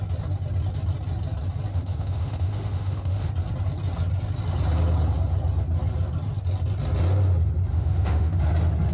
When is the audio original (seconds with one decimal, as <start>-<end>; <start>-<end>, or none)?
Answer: 0.0-1.7; 3.3-7.7; 8.4-8.9